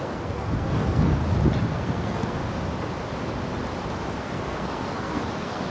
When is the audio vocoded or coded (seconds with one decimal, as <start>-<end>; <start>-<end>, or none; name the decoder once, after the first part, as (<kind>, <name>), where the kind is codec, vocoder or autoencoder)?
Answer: 0.0-1.2 (codec, SNAC); 1.7-2.4; 4.2-5.7

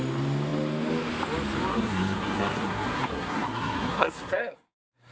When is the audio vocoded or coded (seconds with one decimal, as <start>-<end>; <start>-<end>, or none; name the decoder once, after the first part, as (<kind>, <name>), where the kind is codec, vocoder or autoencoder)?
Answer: 1.7-5.1 (codec, SNAC)

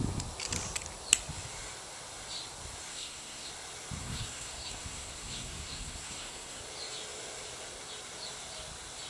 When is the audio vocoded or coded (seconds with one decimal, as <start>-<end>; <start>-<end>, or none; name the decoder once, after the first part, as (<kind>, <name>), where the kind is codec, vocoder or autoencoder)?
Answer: 2.9-3.5 (codec, SNAC); 4.0-6.6

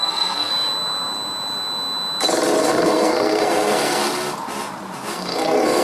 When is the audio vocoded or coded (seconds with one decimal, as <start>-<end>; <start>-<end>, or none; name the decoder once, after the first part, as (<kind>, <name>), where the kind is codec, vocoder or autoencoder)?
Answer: 0.0-0.5 (codec, SNAC); 2.6-4.0; 5.1-5.8

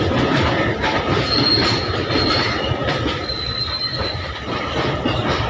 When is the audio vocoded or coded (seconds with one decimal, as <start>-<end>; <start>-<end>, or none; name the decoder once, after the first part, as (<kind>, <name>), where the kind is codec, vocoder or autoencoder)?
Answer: none

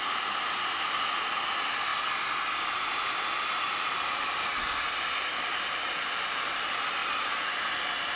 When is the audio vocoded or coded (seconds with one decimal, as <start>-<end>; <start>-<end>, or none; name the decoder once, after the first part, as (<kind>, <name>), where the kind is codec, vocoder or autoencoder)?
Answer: none

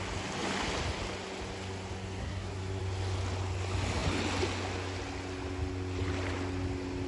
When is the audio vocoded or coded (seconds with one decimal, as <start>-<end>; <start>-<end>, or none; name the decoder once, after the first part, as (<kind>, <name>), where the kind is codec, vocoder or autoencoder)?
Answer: 2.2-2.8 (codec, SNAC)

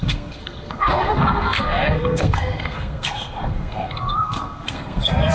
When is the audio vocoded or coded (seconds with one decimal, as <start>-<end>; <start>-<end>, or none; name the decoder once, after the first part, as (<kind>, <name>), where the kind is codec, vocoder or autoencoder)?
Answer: 0.0-5.3 (codec, SNAC)